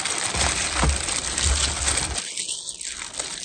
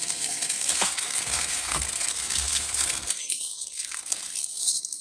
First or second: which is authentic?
first